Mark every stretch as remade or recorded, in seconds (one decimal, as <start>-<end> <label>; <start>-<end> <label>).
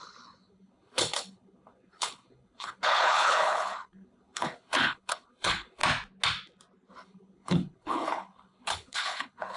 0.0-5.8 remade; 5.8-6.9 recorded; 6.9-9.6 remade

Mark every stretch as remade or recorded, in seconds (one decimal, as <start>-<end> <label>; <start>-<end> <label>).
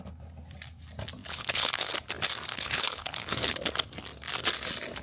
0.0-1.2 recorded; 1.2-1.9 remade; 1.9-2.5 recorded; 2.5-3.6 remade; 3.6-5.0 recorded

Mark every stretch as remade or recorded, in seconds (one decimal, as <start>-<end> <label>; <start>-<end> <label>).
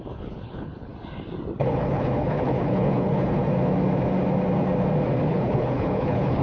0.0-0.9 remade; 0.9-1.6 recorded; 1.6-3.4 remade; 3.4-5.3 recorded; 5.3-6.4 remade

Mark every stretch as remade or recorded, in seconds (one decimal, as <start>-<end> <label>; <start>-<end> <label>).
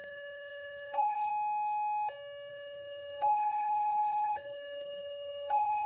0.0-1.3 remade; 1.3-2.5 recorded; 2.5-5.9 remade